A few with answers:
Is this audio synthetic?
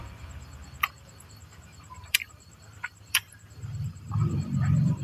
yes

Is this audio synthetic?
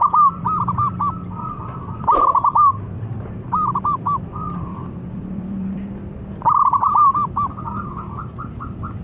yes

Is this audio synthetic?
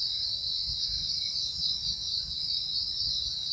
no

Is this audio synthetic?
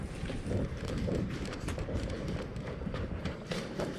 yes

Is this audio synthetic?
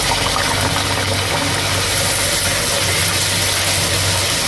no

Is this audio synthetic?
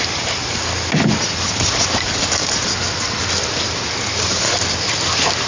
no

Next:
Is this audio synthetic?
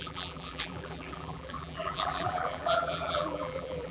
yes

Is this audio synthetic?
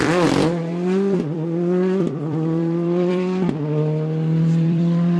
yes